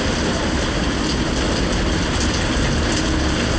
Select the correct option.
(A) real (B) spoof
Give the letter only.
A